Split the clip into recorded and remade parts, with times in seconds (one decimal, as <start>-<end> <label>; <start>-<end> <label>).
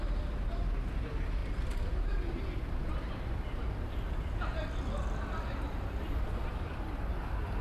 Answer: 0.0-7.6 recorded